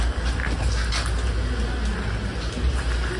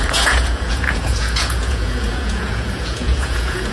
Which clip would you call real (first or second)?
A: first